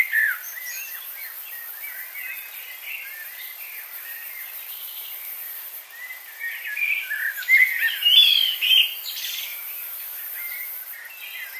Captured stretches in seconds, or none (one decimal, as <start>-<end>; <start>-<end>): 0.0-5.5; 8.8-9.5; 10.2-11.6